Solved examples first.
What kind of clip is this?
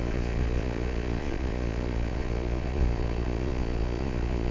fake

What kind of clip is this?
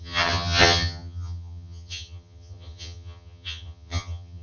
fake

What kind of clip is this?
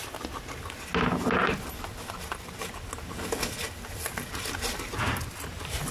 real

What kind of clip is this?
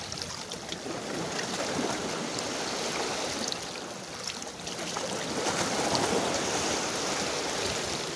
real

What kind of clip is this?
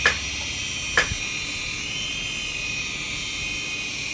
real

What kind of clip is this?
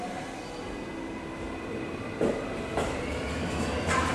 real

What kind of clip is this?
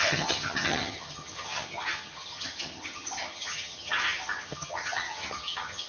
fake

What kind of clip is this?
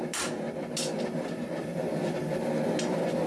fake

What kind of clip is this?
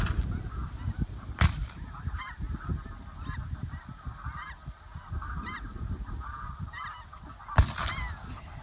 real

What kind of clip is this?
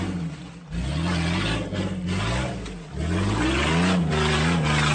real